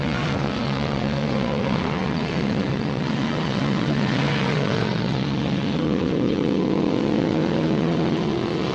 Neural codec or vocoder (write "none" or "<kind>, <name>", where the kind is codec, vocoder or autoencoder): vocoder, WaveNeXt